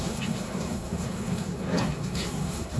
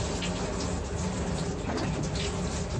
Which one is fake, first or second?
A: first